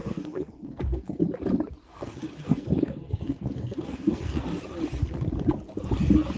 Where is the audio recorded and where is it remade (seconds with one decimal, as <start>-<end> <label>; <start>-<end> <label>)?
0.0-1.2 remade; 1.2-1.8 recorded; 1.8-4.6 remade; 4.6-6.4 recorded